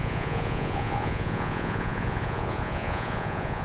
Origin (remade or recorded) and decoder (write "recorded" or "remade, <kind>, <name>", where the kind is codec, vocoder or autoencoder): remade, vocoder, Vocos